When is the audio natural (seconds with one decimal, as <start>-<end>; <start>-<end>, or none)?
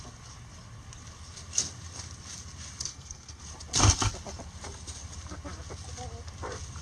0.0-2.9; 3.4-6.8